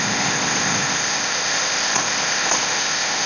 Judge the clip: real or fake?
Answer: fake